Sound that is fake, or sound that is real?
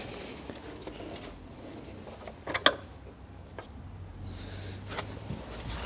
real